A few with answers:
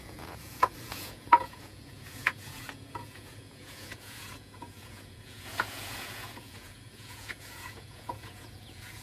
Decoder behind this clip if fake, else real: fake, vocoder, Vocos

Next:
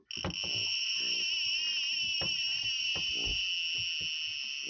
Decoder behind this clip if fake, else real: real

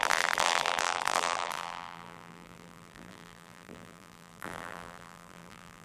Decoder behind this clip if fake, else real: fake, vocoder, BigVGAN v2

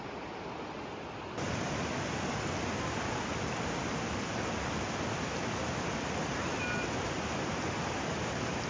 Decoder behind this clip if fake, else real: real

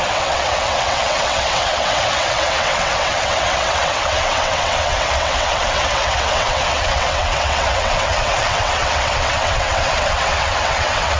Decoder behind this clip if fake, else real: fake, vocoder, WaveNeXt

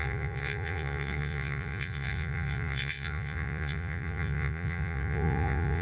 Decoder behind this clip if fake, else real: fake, vocoder, Vocos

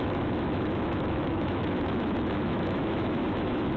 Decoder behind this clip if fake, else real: fake, autoencoder, DAC-VAE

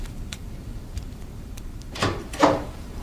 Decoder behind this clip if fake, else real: fake, vocoder, BigVGAN v2